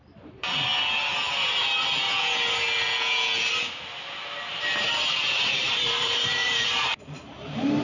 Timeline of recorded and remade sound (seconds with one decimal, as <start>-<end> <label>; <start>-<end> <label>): 0.0-0.7 remade; 0.7-4.5 recorded; 4.5-7.8 remade